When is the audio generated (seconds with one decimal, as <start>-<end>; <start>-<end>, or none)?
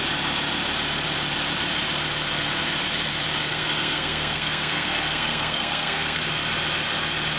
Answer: 3.4-6.2